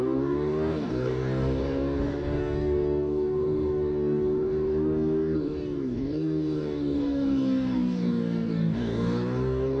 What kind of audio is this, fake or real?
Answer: fake